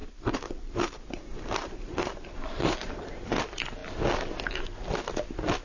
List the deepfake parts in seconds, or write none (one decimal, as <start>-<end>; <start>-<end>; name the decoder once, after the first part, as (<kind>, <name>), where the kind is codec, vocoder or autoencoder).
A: 0.0-3.4 (vocoder, BigVGAN v2)